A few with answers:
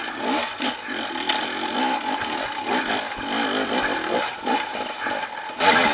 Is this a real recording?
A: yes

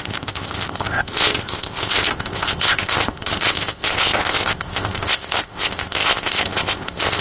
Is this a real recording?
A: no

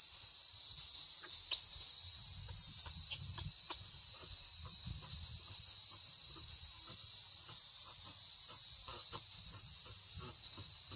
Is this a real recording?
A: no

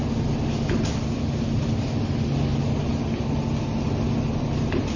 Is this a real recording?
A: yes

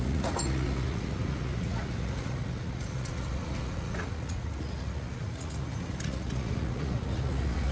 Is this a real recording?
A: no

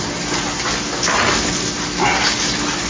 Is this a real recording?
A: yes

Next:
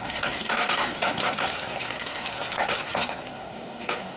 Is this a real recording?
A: no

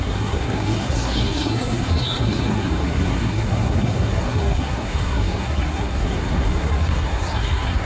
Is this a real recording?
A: no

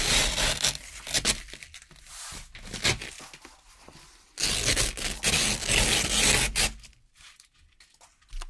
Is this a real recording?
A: yes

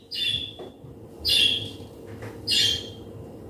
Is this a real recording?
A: yes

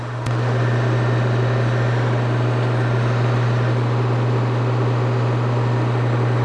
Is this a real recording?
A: yes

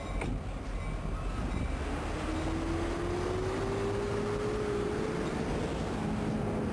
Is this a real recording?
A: yes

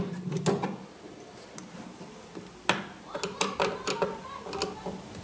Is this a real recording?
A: yes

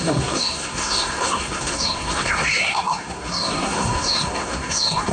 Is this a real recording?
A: no